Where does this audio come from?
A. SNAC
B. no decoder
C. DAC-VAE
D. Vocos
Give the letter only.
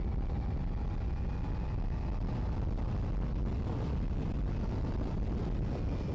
B